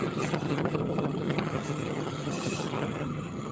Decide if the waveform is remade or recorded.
remade